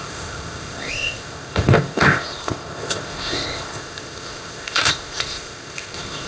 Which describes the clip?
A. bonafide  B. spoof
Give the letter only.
B